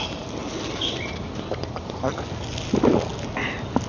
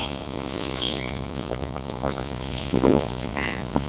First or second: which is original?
first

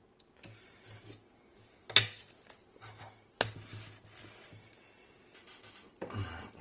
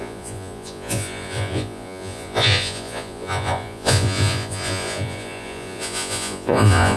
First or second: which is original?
first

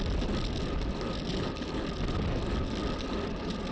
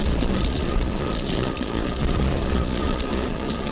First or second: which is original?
first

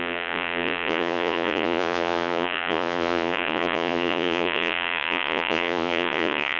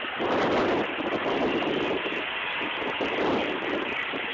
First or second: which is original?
second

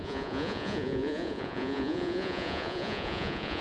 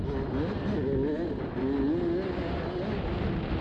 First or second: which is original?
second